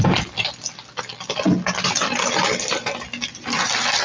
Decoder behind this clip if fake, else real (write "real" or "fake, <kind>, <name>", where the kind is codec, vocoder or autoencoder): real